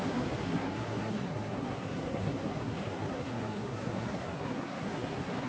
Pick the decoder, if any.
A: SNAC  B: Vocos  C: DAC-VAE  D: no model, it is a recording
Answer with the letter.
A